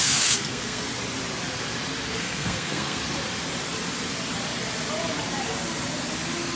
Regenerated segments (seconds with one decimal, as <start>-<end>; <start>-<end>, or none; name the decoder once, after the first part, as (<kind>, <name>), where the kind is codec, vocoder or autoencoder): 0.0-0.9 (codec, SNAC); 2.2-3.0